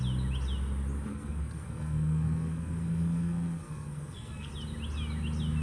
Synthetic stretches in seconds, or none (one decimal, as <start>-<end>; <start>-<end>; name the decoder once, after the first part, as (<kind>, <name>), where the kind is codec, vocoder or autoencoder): 1.1-4.5 (codec, SNAC)